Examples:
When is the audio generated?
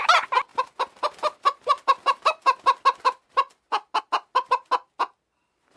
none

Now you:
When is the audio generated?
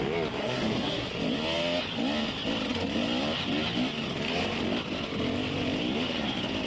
0.4-1.1 (codec, SNAC)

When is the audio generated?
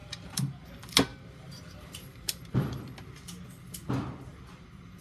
0.0-0.7 (vocoder, BigVGAN v2); 1.1-2.8; 4.3-5.0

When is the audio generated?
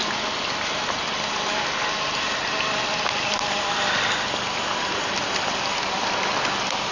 none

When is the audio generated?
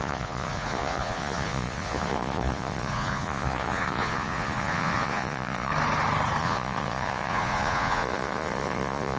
0.0-5.7 (vocoder, Vocos); 6.4-9.2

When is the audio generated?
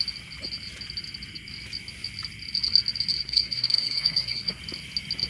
3.2-4.6 (codec, SNAC)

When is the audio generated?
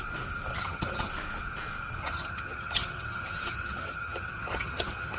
0.5-1.1 (vocoder, HiFi-GAN); 2.0-5.2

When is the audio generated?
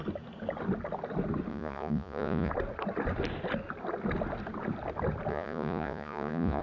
1.5-2.5 (vocoder, Vocos); 5.3-6.6